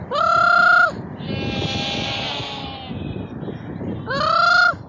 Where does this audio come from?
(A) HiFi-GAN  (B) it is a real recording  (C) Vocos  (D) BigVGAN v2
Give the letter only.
B